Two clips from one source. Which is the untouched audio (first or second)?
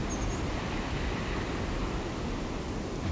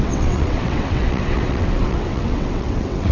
first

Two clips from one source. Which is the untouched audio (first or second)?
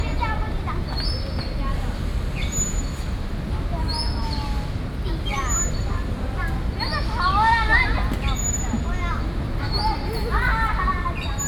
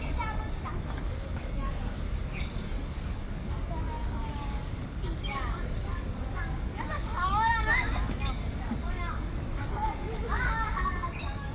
first